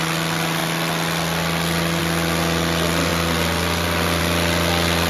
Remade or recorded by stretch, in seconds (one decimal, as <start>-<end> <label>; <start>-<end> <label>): 0.0-5.1 recorded